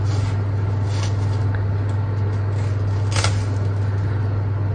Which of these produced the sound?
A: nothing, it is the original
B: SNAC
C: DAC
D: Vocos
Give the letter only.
A